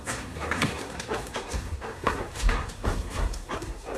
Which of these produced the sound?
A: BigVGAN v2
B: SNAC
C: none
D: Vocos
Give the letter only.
B